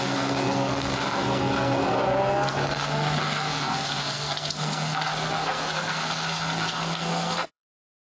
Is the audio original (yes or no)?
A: no